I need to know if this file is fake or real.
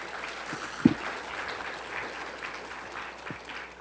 real